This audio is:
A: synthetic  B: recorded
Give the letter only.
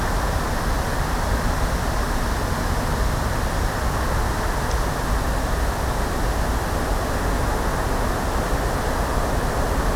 B